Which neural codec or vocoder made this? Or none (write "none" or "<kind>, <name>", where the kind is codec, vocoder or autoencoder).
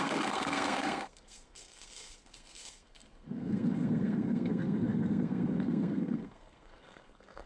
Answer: codec, SNAC